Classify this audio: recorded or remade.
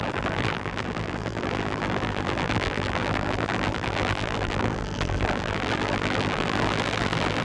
remade